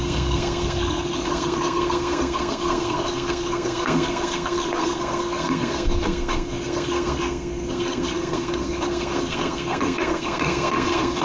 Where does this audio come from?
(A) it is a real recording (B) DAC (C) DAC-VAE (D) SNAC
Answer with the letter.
D